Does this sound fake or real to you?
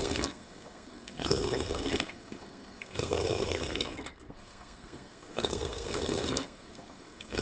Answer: fake